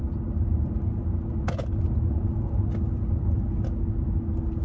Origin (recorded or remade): recorded